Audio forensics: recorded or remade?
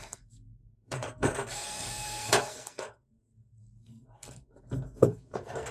remade